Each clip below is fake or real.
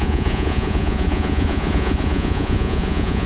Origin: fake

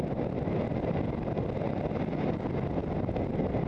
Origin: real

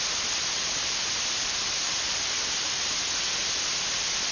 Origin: real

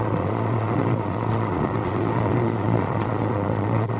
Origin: fake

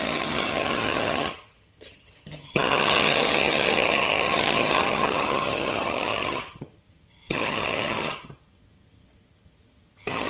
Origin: fake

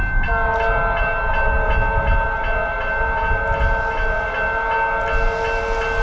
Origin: real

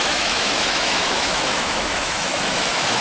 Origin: fake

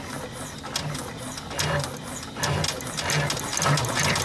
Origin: real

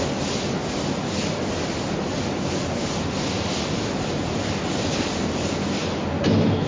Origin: real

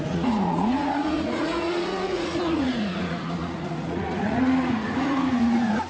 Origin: fake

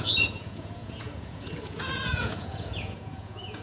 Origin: fake